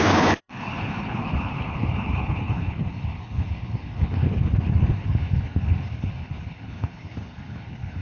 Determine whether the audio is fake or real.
fake